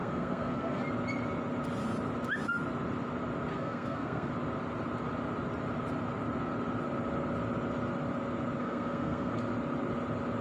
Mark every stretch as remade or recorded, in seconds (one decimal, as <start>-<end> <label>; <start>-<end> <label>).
0.0-0.8 remade; 0.8-3.5 recorded; 3.5-4.3 remade; 4.3-8.6 recorded; 8.6-9.4 remade; 9.4-10.4 recorded